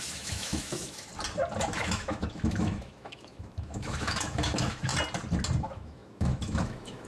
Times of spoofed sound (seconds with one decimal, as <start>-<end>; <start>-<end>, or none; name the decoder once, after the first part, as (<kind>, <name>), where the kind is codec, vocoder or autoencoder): 0.0-1.1 (autoencoder, DAC-VAE); 1.7-4.9; 5.6-7.1